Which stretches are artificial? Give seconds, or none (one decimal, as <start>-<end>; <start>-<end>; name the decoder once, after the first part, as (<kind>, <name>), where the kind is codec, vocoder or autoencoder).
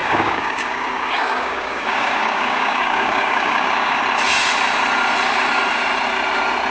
0.0-4.0 (codec, DAC)